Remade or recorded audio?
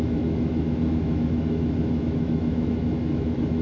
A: remade